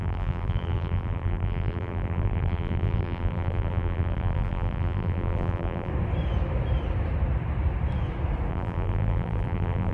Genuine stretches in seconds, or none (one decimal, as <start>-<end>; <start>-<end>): 5.9-8.5